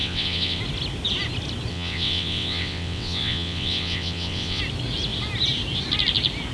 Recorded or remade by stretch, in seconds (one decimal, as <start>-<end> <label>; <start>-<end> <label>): 0.0-0.6 remade; 0.6-1.7 recorded; 1.7-4.6 remade; 4.6-6.5 recorded